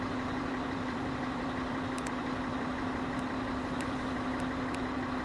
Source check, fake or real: fake